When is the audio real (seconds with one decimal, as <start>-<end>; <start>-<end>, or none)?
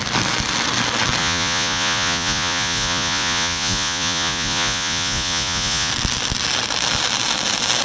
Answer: 0.0-1.2; 5.9-7.8